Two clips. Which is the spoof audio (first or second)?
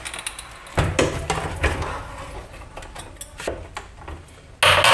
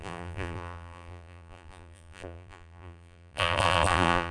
second